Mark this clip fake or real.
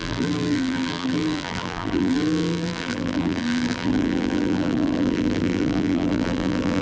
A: fake